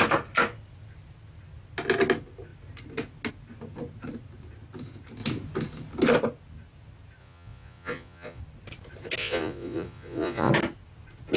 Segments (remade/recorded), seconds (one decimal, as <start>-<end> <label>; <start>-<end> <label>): 0.0-7.2 recorded; 7.2-8.4 remade; 8.4-9.2 recorded; 9.2-10.5 remade; 10.5-11.4 recorded

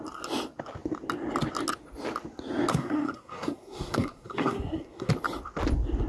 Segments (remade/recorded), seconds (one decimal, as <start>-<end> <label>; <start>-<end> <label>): 0.0-2.7 recorded; 2.7-5.1 remade; 5.1-6.1 recorded

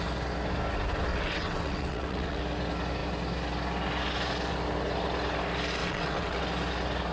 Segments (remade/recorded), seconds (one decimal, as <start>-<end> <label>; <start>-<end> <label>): 0.0-1.1 recorded; 1.1-2.4 remade; 2.4-5.8 recorded; 5.8-6.4 remade; 6.4-7.1 recorded

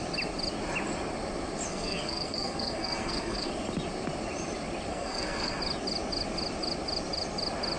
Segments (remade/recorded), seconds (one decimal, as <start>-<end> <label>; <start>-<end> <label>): 0.0-1.7 recorded; 1.7-3.5 remade; 3.5-4.9 recorded; 4.9-5.6 remade; 5.6-7.8 recorded

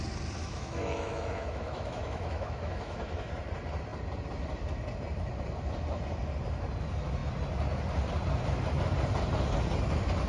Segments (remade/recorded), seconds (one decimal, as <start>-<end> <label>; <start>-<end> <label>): 0.0-0.4 recorded; 0.4-3.3 remade; 3.3-10.3 recorded

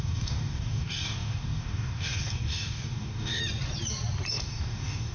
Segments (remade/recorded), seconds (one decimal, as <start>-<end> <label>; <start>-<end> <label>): 0.0-3.4 remade; 3.4-4.3 recorded; 4.3-5.1 remade